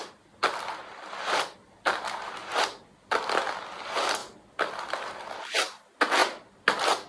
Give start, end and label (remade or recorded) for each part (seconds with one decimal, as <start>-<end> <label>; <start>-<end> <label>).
0.0-2.3 remade; 2.3-7.1 recorded